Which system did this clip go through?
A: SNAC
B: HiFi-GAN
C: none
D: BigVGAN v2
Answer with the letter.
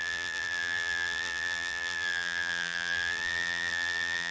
D